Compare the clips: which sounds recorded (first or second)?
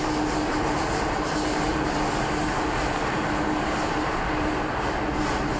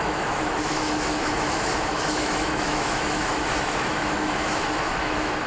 first